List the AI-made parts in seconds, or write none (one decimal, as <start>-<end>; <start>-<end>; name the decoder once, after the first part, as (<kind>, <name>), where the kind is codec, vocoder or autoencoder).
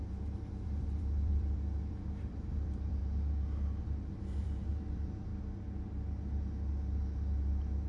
0.0-3.0 (vocoder, BigVGAN v2); 3.8-5.3